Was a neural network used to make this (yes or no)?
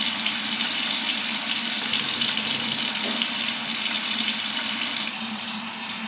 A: no